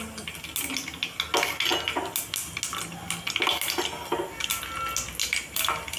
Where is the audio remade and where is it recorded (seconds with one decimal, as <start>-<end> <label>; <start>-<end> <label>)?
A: 0.0-6.0 recorded